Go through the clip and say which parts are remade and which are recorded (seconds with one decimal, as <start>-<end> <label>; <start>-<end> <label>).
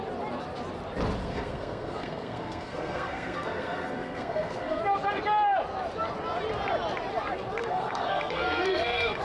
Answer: 0.0-1.2 recorded; 1.2-4.8 remade; 4.8-7.6 recorded; 7.6-9.2 remade